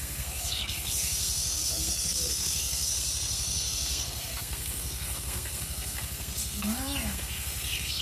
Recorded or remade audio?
remade